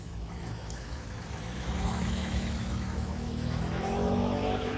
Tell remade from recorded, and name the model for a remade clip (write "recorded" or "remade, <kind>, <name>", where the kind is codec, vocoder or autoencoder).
remade, autoencoder, DAC-VAE